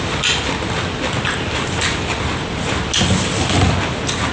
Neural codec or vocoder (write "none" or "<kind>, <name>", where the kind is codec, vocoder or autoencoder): none